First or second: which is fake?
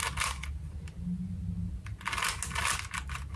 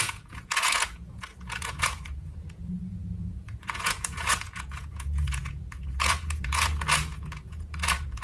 second